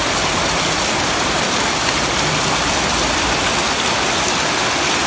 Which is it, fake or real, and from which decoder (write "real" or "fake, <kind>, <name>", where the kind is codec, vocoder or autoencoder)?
real